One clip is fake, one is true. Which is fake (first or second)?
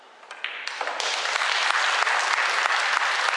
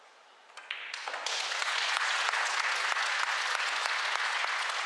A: second